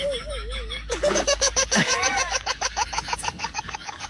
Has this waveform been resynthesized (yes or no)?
yes